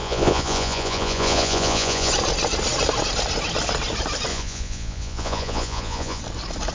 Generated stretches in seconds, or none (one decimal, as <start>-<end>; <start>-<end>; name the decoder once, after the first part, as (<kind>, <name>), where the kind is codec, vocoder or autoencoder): 0.0-2.1 (vocoder, Vocos); 4.3-6.2